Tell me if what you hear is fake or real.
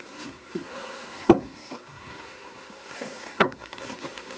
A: fake